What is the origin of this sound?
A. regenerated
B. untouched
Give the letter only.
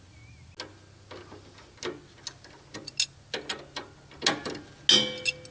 B